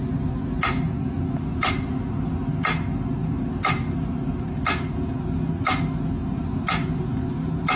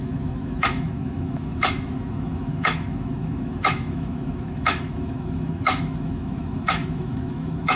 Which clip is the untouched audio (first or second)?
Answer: first